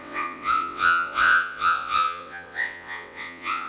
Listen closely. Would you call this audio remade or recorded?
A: remade